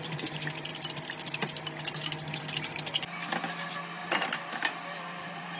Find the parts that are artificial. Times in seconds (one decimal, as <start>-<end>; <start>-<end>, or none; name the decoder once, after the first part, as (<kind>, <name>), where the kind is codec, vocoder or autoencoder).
4.0-5.6 (vocoder, BigVGAN v2)